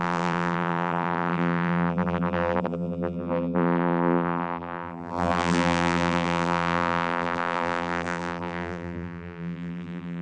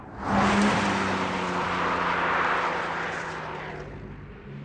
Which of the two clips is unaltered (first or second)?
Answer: second